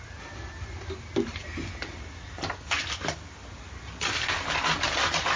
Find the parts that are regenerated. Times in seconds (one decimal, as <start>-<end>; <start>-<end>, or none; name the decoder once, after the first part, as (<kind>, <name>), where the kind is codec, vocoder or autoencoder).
none